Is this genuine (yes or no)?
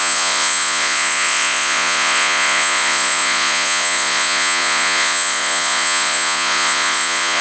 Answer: no